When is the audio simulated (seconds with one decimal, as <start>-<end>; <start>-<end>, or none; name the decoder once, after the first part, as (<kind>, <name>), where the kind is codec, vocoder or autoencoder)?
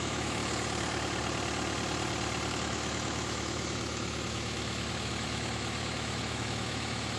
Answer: 0.0-0.4 (autoencoder, DAC-VAE); 2.5-7.2